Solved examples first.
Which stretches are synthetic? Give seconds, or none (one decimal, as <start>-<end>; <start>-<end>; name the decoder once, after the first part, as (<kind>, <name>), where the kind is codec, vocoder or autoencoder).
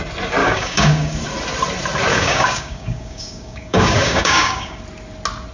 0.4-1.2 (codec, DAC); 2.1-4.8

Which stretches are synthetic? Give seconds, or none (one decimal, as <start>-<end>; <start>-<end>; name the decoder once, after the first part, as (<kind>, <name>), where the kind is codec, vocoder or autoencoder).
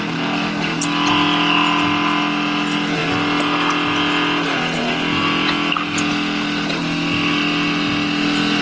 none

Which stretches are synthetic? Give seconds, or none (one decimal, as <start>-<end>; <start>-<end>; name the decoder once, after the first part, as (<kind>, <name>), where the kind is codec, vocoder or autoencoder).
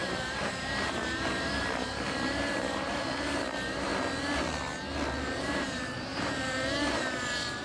0.0-3.9 (vocoder, BigVGAN v2); 5.2-7.6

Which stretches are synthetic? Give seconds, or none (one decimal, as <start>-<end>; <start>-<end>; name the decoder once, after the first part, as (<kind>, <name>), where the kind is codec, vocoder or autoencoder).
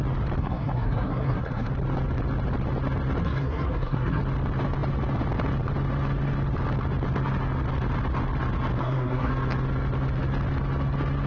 0.4-1.7 (codec, SNAC); 3.2-4.2; 8.8-9.3